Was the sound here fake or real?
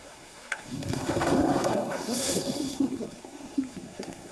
fake